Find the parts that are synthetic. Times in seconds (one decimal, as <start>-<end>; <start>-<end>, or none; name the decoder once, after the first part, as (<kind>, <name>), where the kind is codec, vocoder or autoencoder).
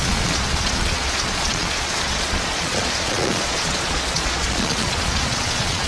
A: 0.0-5.9 (vocoder, Vocos)